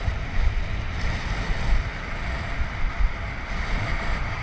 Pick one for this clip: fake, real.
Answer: real